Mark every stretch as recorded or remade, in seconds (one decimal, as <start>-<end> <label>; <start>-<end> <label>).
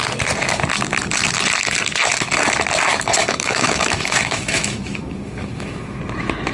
0.0-3.2 recorded; 3.2-6.0 remade; 6.0-6.5 recorded